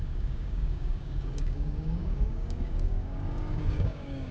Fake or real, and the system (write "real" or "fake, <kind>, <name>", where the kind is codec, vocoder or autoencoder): fake, codec, DAC